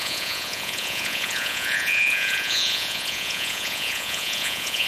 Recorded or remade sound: remade